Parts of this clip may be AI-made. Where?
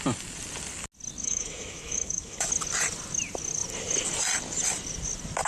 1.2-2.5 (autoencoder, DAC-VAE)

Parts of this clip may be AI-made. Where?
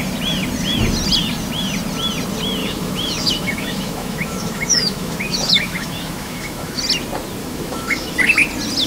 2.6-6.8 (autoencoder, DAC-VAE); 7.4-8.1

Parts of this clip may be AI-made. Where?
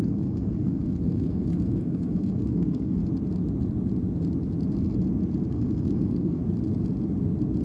0.0-3.0 (codec, SNAC); 5.5-6.4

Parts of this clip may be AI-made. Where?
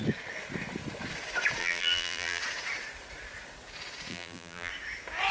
1.6-2.4 (vocoder, BigVGAN v2); 4.1-4.7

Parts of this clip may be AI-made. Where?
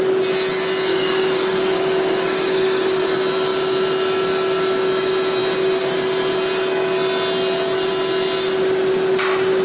0.9-3.0 (codec, DAC)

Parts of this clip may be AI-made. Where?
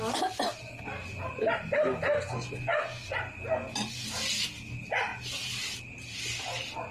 0.0-2.1 (vocoder, BigVGAN v2); 4.5-5.1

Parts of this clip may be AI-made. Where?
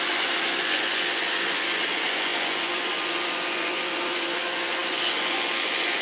0.0-6.0 (vocoder, Vocos)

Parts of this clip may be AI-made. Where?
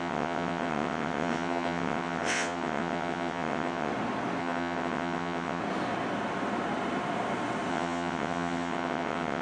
0.0-3.9 (vocoder, WaveNeXt); 4.4-5.6; 7.7-9.4